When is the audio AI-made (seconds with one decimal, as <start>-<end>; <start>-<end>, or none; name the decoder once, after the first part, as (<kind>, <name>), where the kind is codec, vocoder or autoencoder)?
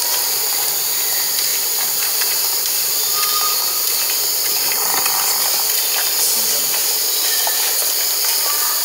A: 1.5-2.6 (vocoder, BigVGAN v2); 6.8-7.3; 7.8-8.3